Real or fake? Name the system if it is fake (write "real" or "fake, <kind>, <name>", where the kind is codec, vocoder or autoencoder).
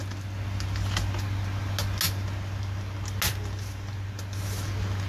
real